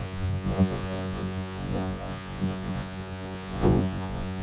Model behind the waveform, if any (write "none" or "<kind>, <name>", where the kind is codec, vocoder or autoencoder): vocoder, Vocos